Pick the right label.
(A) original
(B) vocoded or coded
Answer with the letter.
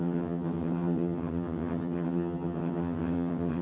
B